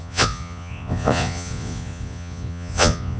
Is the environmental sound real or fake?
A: fake